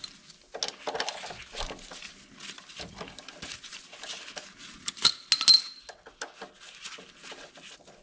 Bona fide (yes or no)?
yes